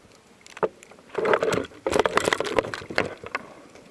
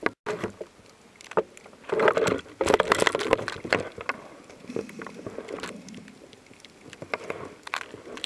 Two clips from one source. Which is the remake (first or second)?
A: first